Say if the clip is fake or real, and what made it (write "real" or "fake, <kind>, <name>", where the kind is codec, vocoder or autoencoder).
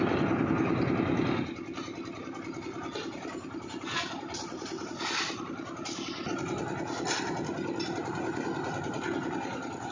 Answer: real